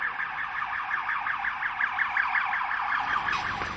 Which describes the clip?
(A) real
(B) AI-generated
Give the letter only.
A